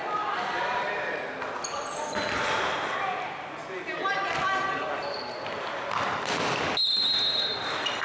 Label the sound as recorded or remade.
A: recorded